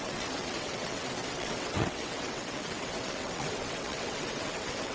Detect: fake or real fake